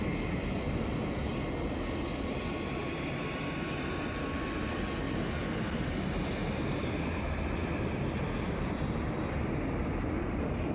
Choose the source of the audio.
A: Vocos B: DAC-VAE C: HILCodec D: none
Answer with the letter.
D